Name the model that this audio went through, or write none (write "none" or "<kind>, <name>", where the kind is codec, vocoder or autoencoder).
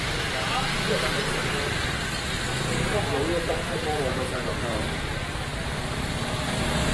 none